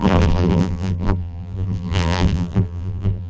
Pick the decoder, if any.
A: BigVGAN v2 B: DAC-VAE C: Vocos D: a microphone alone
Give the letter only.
A